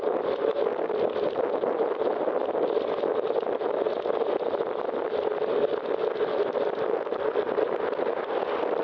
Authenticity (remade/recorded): recorded